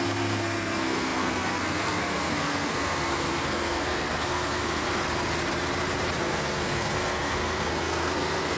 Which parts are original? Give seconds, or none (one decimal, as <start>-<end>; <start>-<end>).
5.0-6.2